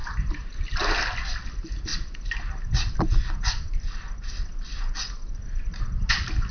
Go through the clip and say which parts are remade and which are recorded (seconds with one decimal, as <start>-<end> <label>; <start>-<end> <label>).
0.0-6.5 recorded

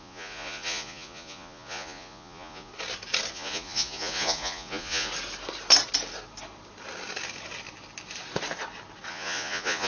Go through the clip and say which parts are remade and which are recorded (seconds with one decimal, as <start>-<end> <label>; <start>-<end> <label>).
0.0-2.7 remade; 2.7-3.3 recorded; 3.3-5.1 remade; 5.1-9.1 recorded; 9.1-9.9 remade

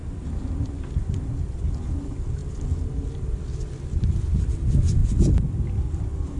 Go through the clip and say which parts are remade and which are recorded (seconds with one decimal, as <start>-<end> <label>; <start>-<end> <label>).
0.0-6.4 recorded

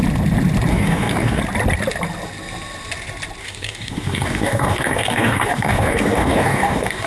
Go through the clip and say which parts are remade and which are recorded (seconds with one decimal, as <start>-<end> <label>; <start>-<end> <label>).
0.0-0.7 recorded; 0.7-1.4 remade; 1.4-3.4 recorded; 3.4-7.1 remade

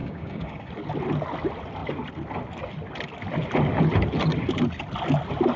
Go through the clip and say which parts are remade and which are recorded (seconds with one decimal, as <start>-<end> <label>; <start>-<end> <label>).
0.0-0.7 remade; 0.7-5.6 recorded

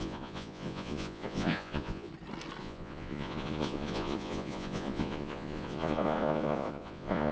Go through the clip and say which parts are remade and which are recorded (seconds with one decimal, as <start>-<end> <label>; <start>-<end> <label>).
0.0-2.1 remade; 2.1-2.6 recorded; 2.6-7.3 remade

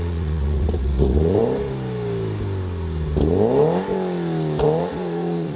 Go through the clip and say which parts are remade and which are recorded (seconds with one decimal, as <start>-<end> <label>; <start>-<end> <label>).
0.0-1.4 remade; 1.4-4.8 recorded; 4.8-5.6 remade

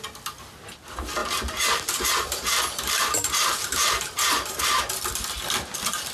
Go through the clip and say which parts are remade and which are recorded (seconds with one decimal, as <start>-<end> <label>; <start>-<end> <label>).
0.0-1.2 recorded; 1.2-4.8 remade; 4.8-6.1 recorded